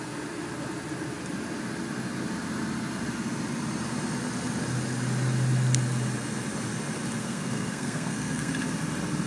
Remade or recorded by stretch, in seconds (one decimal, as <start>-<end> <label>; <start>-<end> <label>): 0.0-7.2 recorded; 7.2-8.5 remade; 8.5-9.3 recorded